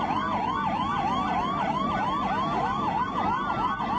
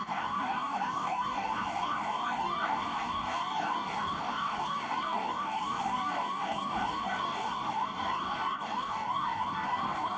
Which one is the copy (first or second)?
second